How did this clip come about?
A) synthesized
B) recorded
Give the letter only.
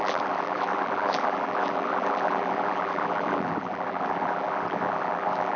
A